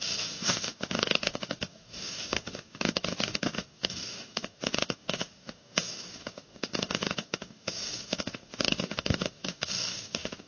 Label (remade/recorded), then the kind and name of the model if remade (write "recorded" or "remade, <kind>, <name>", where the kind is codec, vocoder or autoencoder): remade, codec, DAC